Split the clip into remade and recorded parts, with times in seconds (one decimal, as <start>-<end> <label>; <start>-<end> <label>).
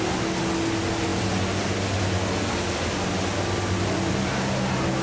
0.0-5.0 recorded